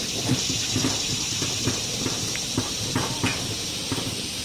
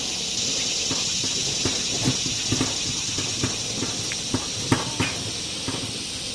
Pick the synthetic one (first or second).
first